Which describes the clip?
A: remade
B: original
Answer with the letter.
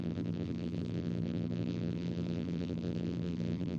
A